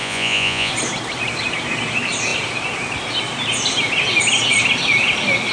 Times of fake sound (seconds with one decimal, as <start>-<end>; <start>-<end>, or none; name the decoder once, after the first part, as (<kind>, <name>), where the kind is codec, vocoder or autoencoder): 0.0-0.7 (vocoder, Vocos)